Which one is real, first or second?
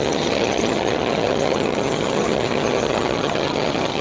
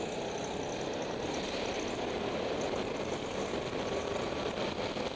second